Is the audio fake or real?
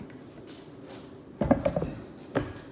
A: real